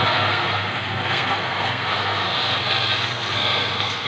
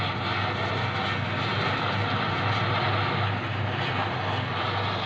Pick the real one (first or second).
second